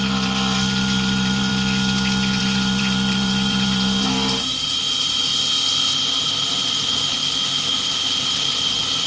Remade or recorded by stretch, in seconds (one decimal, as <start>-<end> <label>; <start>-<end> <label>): 0.0-1.5 remade; 1.5-2.4 recorded; 2.4-5.3 remade; 5.3-6.2 recorded; 6.2-7.2 remade; 7.2-8.1 recorded; 8.1-9.1 remade